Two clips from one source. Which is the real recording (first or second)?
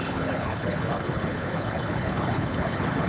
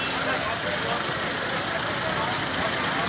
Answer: second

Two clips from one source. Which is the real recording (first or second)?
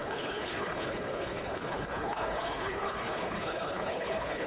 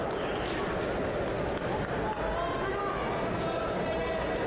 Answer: second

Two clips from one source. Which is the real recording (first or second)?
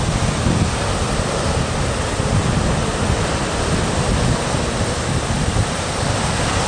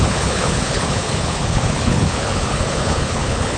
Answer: first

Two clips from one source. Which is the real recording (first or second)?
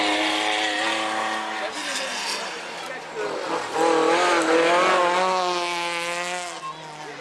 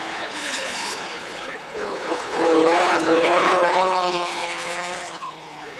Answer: first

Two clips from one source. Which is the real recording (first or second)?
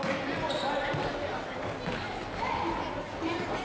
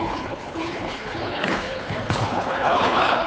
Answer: first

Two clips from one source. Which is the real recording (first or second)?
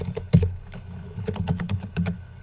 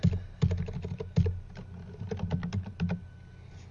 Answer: second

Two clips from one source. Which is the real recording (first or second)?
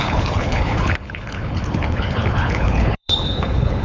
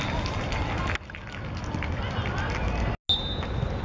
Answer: second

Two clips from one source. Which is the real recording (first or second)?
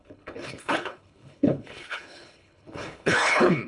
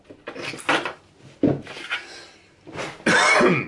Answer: second